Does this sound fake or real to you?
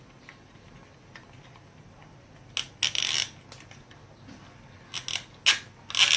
real